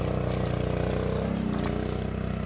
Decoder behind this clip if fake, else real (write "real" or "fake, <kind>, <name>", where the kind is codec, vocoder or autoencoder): real